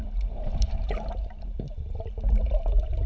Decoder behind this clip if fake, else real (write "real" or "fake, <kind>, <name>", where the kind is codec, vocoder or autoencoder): fake, vocoder, BigVGAN v2